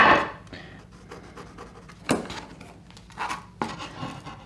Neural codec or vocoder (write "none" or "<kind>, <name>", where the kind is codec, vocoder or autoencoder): none